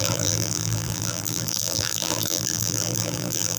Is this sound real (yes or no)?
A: no